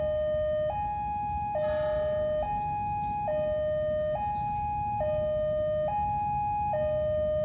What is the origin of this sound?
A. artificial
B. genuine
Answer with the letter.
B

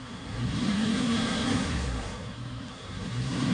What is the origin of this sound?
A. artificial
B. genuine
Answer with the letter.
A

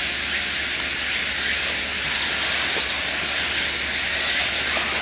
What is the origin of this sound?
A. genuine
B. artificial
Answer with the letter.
A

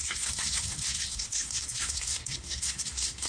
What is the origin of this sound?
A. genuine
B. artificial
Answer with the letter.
B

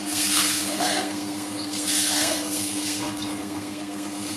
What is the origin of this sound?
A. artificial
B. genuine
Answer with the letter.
A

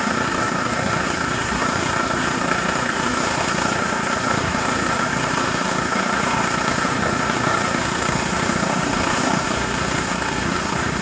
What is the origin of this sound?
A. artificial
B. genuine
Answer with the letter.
A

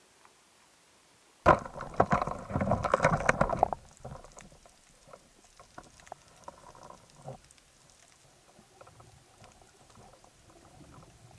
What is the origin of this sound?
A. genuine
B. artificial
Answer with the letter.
A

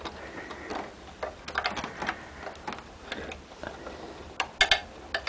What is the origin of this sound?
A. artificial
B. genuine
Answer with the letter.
B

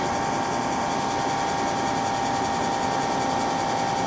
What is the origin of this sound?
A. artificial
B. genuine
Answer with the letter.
B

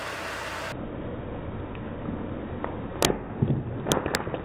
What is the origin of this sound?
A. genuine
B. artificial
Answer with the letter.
A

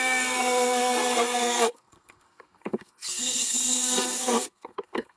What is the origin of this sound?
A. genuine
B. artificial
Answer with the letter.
B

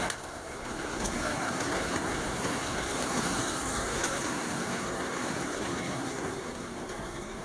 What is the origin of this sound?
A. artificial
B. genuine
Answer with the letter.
A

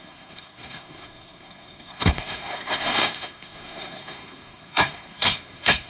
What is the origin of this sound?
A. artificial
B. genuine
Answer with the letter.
A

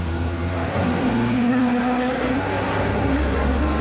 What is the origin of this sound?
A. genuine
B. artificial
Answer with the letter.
B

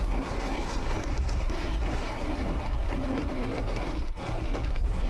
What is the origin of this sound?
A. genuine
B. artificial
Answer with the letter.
B